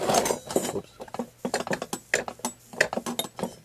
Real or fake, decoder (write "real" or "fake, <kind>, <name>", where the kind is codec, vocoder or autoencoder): real